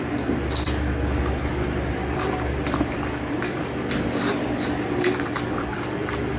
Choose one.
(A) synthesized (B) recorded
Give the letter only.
A